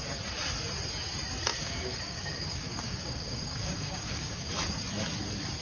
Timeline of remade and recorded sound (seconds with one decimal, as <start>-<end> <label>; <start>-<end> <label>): 0.0-1.5 recorded; 1.5-4.5 remade; 4.5-5.6 recorded